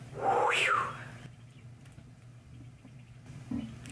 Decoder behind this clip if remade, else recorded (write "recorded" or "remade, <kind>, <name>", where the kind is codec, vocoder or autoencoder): recorded